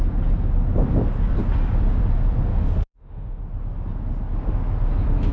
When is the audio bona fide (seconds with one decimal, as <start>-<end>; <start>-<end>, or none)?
0.0-2.5; 3.4-5.3